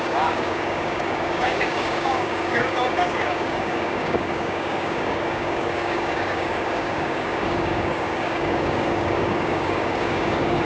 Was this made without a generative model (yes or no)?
no